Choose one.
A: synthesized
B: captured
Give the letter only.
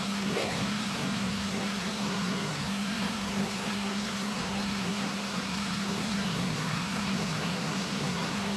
A